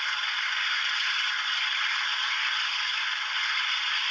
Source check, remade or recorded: recorded